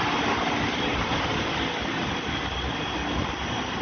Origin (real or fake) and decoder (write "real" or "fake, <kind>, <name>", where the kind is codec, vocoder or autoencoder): real